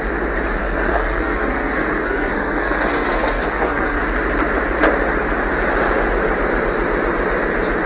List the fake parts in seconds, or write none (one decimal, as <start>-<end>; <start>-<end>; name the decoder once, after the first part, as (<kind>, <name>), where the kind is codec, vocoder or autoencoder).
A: 0.6-4.0 (codec, SNAC)